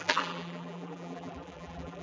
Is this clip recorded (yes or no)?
no